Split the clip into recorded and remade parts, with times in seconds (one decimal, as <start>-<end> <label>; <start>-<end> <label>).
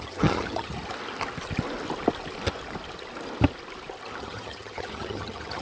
0.0-0.8 remade; 0.8-4.2 recorded; 4.2-5.6 remade